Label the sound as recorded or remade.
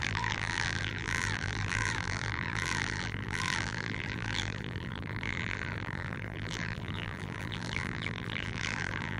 remade